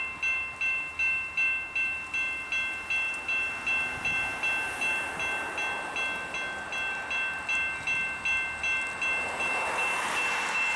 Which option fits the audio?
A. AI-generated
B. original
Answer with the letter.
B